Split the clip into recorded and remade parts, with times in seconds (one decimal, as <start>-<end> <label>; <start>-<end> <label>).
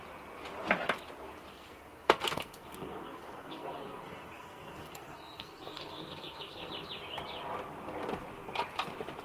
0.0-1.5 recorded; 1.5-6.7 remade; 6.7-9.2 recorded